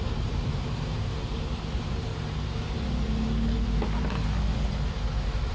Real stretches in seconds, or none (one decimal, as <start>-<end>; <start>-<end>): 2.1-5.5

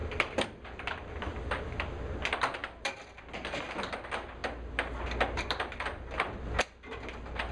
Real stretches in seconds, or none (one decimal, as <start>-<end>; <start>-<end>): 1.6-2.6; 4.0-4.4; 6.4-7.5